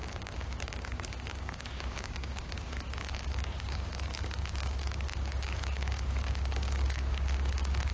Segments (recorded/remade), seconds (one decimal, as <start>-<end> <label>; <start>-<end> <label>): 0.0-7.9 remade